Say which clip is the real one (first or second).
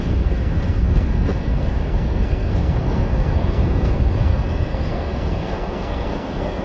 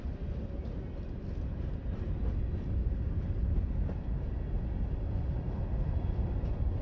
second